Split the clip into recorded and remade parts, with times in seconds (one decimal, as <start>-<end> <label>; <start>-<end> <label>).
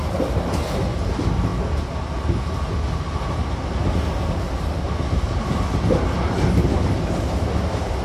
0.0-8.0 recorded